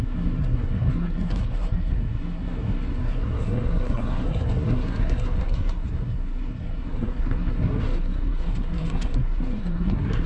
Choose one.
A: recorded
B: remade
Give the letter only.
B